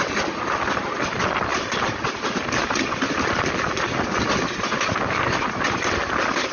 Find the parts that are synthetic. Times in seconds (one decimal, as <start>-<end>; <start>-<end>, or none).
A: none